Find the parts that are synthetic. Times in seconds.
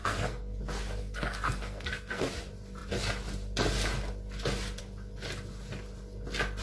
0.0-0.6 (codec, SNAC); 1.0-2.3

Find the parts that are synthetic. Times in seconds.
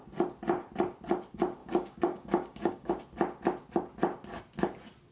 1.6-2.9 (codec, DAC)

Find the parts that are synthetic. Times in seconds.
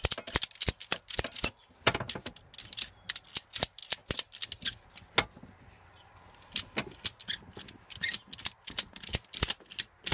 none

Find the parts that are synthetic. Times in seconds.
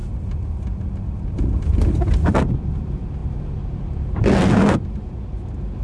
none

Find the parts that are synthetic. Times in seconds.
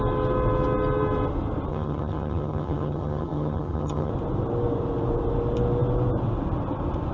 1.7-4.1 (vocoder, HiFi-GAN)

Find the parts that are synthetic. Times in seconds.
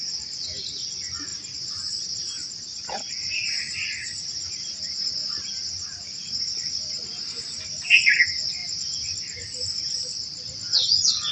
1.3-4.8 (vocoder, BigVGAN v2); 5.2-6.3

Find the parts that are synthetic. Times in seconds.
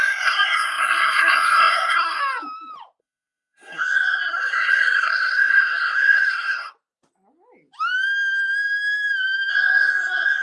0.0-2.2 (codec, SNAC); 3.0-6.7; 9.5-10.4